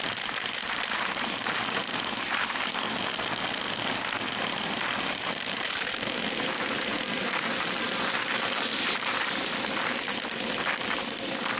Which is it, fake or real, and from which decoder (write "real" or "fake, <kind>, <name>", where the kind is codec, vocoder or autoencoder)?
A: real